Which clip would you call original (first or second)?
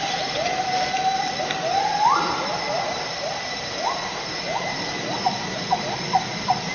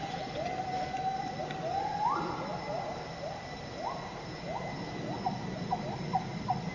second